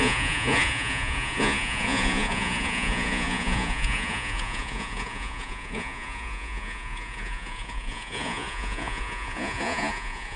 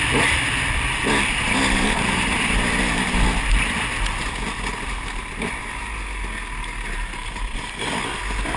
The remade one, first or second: first